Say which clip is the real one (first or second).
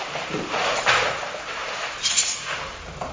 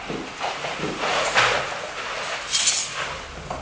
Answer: second